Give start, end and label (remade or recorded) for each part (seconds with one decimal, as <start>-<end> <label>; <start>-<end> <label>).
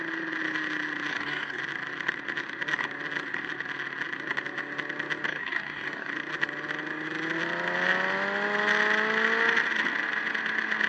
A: 0.0-1.1 recorded; 1.1-1.6 remade; 1.6-5.3 recorded; 5.3-6.1 remade; 6.1-10.9 recorded